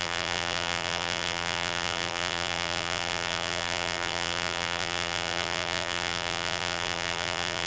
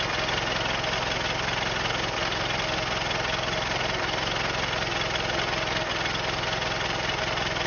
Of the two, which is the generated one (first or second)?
first